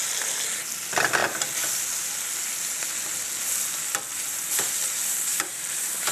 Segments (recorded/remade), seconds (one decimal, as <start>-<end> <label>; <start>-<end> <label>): 0.0-5.3 recorded; 5.3-6.1 remade